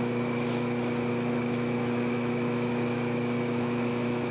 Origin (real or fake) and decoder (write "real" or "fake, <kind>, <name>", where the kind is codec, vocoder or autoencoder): fake, autoencoder, DAC-VAE